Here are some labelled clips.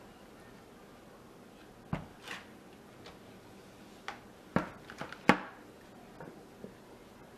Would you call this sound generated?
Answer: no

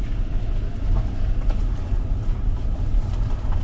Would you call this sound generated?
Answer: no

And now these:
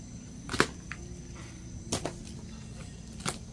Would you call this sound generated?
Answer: no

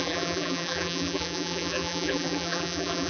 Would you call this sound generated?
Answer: yes